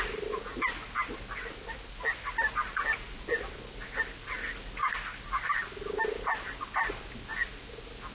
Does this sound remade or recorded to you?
recorded